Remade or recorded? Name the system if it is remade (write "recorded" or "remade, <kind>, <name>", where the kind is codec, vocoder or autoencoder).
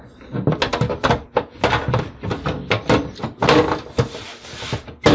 recorded